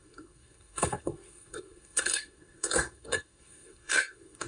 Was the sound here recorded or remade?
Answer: remade